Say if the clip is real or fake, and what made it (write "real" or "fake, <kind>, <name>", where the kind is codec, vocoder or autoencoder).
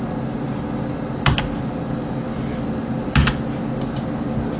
real